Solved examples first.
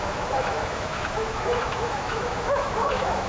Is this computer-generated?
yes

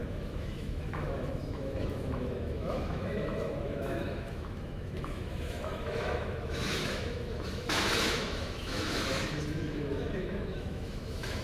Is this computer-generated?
yes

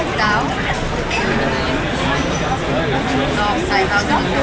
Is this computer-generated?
no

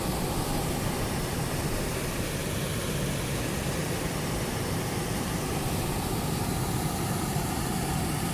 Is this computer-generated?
no